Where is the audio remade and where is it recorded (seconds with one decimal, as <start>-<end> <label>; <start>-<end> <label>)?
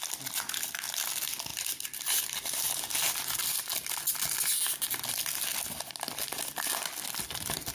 0.0-7.7 recorded